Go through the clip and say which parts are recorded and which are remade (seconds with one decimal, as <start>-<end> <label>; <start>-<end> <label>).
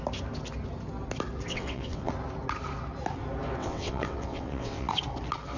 0.0-1.5 recorded; 1.5-2.1 remade; 2.1-3.6 recorded; 3.6-4.9 remade; 4.9-5.6 recorded